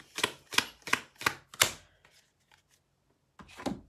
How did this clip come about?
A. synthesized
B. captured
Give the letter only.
B